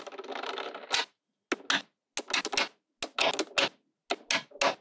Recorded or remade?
recorded